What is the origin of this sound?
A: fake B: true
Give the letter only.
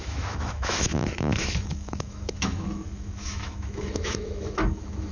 A